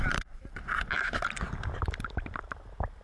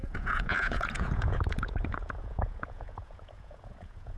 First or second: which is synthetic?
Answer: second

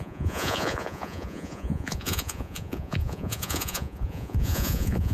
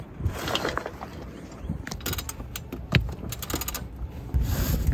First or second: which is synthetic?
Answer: first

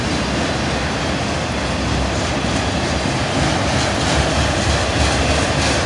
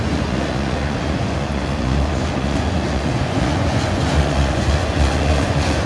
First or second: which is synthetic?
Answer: second